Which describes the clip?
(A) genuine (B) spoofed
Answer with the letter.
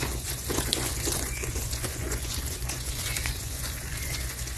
B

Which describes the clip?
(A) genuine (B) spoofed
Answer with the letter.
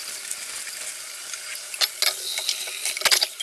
A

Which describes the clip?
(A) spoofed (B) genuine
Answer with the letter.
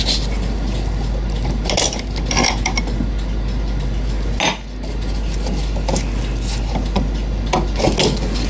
B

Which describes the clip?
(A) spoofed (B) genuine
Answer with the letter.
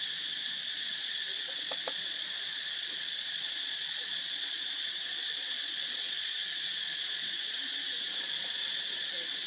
A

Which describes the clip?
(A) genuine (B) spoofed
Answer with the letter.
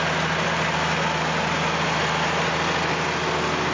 A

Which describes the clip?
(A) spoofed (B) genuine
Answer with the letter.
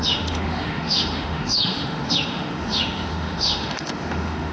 A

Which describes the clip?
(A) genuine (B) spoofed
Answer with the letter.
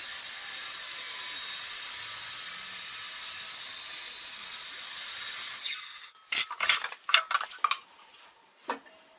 A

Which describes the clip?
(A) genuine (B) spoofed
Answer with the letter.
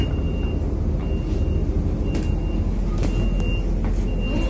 A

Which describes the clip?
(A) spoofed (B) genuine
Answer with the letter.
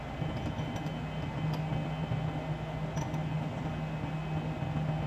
B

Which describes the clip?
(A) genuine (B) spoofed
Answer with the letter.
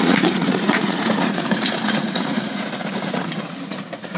B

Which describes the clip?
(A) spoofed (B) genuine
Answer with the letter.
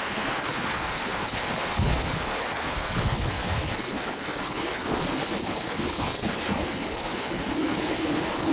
A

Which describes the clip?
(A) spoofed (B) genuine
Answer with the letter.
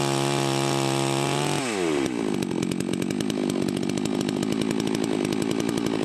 B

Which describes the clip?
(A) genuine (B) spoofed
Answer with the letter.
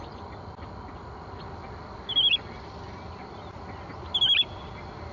A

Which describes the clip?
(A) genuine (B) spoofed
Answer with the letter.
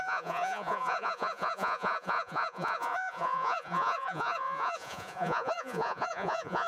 B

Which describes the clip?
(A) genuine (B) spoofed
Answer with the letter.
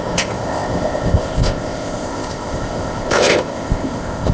B